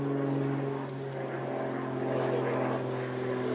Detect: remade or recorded recorded